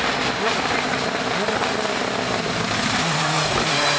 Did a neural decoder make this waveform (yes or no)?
no